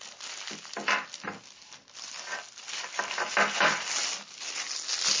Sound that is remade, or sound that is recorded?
recorded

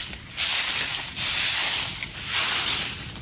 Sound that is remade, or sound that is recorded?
recorded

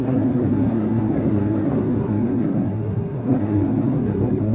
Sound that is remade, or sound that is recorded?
remade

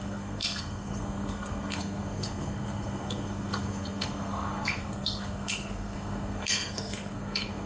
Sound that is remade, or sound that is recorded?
remade